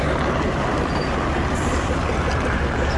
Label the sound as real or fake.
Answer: real